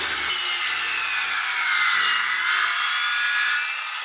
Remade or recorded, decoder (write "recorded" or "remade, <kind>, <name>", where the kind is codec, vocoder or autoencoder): recorded